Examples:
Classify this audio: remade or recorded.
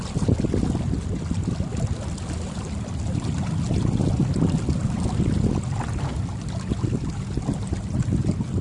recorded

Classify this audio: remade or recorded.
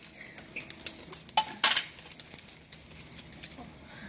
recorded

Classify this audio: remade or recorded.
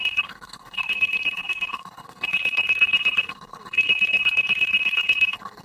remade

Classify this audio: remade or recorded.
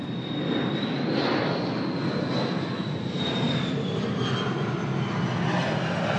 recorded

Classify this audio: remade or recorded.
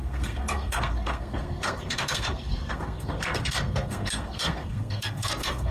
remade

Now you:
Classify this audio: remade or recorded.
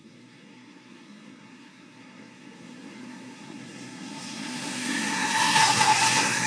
remade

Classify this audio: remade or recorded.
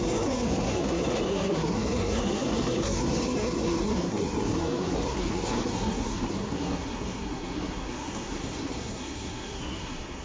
remade